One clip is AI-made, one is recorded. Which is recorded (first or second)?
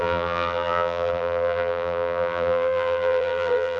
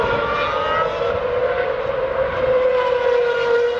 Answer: second